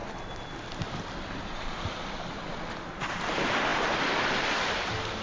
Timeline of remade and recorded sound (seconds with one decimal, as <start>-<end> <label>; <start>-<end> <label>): 0.0-5.2 recorded